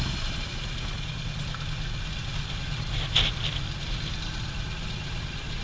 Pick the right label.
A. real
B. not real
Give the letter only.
A